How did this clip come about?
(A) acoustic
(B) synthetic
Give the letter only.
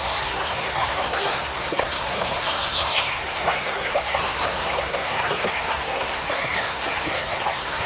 B